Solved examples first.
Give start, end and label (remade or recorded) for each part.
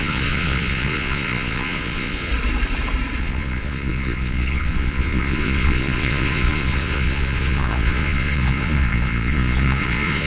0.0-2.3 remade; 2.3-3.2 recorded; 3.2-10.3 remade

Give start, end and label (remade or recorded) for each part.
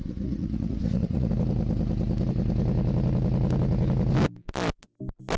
0.0-1.3 remade; 1.3-5.4 recorded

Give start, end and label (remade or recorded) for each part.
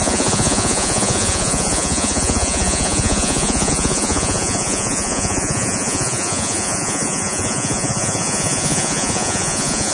0.0-9.9 remade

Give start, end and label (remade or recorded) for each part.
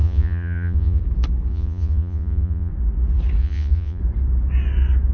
0.0-1.0 remade; 1.0-1.5 recorded; 1.5-2.7 remade; 2.7-3.4 recorded; 3.4-4.0 remade; 4.0-5.1 recorded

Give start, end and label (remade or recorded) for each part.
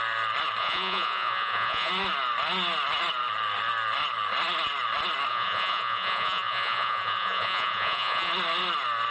0.0-0.6 recorded; 0.6-1.9 remade; 1.9-5.3 recorded; 5.3-8.3 remade; 8.3-9.1 recorded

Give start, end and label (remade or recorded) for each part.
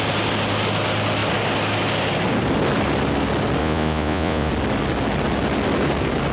0.0-3.6 recorded; 3.6-4.5 remade; 4.5-6.3 recorded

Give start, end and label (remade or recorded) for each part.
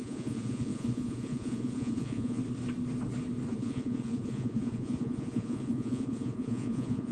0.0-2.4 remade; 2.4-3.5 recorded; 3.5-7.1 remade